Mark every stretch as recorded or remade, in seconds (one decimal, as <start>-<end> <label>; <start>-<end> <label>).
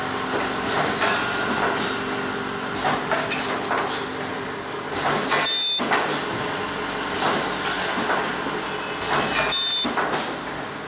0.0-10.9 recorded